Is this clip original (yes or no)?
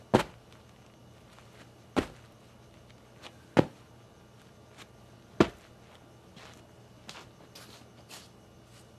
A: yes